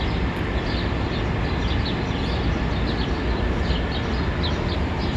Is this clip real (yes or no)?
yes